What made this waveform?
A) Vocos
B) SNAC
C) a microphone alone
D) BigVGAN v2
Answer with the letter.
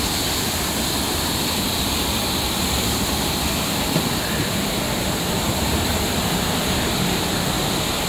D